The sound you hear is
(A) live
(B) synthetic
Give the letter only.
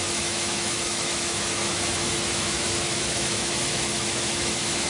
B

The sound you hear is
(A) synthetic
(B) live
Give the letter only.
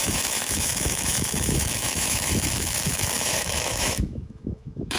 A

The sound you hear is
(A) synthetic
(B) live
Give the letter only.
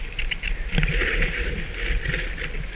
B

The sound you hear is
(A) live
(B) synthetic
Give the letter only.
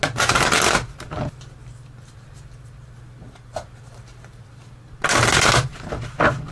A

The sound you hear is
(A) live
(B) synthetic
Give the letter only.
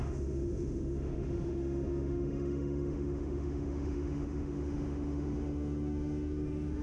B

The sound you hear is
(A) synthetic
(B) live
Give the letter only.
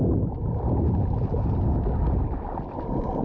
B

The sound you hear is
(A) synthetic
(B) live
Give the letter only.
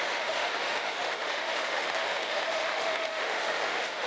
A